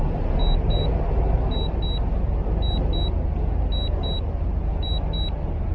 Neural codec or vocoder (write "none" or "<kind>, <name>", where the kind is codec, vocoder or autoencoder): none